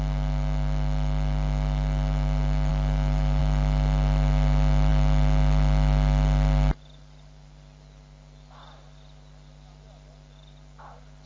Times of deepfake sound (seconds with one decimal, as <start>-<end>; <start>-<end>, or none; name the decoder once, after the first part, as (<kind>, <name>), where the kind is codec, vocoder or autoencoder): 2.7-3.4 (autoencoder, DAC-VAE)